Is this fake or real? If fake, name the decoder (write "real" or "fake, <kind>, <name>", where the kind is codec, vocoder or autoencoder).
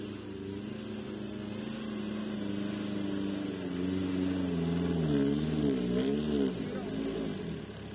real